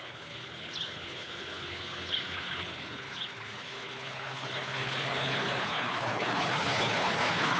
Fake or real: fake